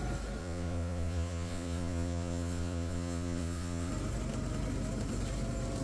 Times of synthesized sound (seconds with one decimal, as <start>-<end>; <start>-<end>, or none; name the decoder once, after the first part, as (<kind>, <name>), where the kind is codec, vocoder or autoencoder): 0.4-3.9 (vocoder, Vocos)